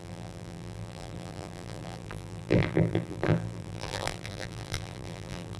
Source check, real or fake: fake